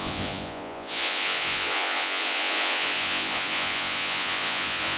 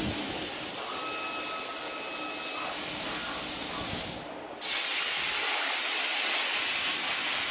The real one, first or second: second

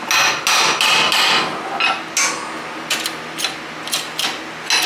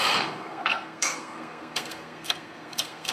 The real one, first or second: first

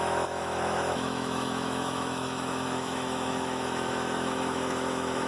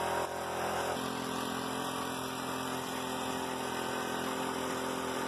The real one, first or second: second